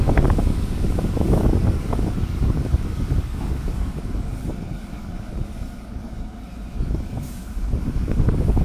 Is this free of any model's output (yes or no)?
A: no